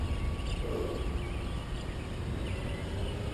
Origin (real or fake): real